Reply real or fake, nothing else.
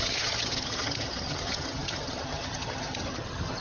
fake